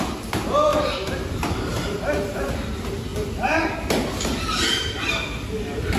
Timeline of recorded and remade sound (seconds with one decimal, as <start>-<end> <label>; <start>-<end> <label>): 0.0-6.0 recorded